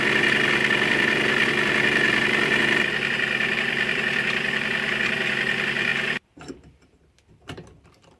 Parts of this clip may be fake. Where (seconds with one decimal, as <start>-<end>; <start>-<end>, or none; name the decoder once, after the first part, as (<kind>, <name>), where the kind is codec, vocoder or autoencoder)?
0.0-8.2 (vocoder, BigVGAN v2)